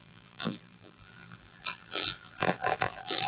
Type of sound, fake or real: fake